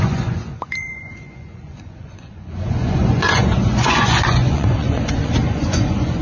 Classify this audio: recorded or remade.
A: remade